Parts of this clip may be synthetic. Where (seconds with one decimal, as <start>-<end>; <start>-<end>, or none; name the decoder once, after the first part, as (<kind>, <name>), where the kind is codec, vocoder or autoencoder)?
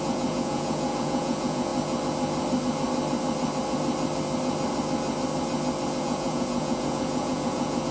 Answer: 0.0-1.7 (vocoder, Vocos); 6.0-7.9